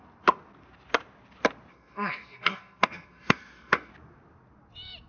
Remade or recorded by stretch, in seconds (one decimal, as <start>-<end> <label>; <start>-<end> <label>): 0.0-1.7 recorded; 1.7-3.9 remade; 3.9-5.1 recorded